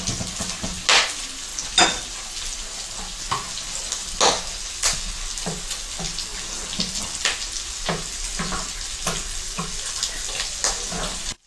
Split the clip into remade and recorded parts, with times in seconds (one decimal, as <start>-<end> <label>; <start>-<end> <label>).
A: 0.0-11.5 recorded